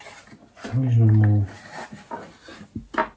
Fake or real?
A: real